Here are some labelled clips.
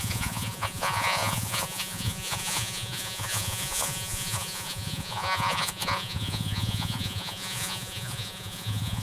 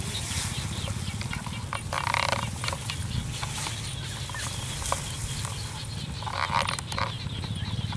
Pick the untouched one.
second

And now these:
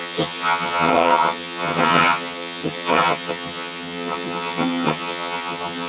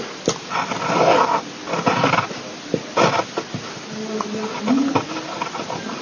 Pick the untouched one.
second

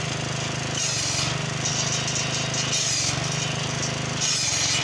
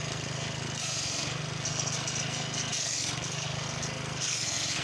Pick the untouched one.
first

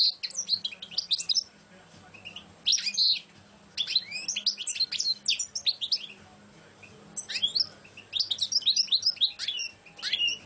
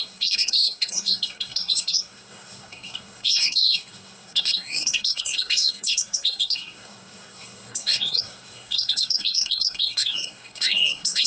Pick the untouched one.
first